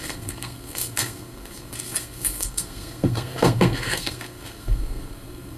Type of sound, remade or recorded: remade